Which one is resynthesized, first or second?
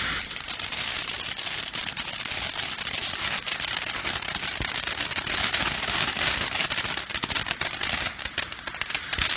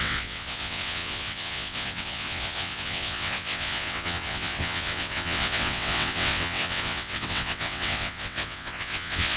second